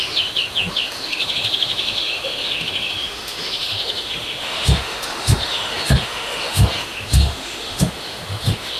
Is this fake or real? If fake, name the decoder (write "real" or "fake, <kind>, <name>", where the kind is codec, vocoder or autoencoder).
fake, autoencoder, DAC-VAE